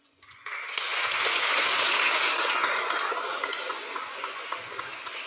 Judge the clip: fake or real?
fake